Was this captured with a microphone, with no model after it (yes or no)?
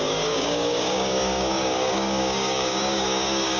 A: no